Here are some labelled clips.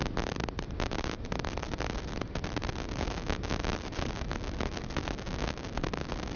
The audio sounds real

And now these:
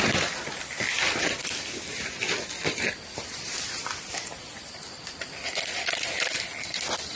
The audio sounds fake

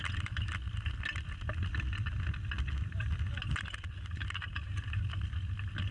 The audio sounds real